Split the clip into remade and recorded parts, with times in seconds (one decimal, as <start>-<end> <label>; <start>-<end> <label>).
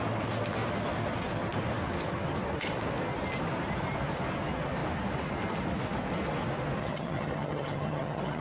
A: 0.0-6.8 recorded; 6.8-8.4 remade